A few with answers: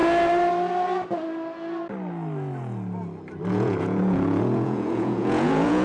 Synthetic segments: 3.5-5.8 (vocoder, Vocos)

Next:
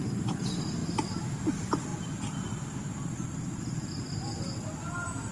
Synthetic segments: none